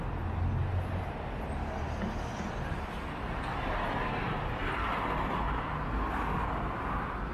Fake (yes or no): no